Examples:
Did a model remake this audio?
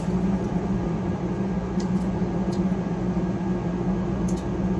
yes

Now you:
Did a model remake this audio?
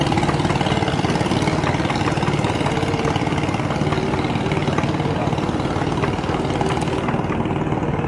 no